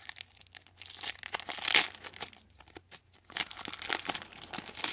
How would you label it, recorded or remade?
recorded